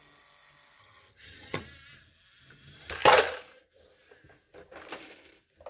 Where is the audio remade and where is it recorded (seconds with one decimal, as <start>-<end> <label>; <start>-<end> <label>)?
0.0-0.8 recorded; 0.8-1.6 remade; 1.6-5.7 recorded